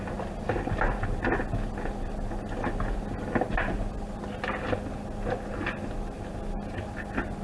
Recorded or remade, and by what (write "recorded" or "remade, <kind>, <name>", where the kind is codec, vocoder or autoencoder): recorded